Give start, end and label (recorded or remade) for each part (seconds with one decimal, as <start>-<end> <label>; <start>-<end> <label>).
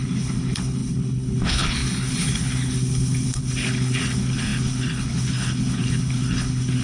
0.0-6.8 remade